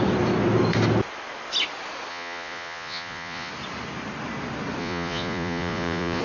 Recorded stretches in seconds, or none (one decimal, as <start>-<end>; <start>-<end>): 0.0-2.1; 3.5-4.8